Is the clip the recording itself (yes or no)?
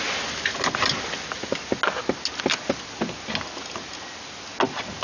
yes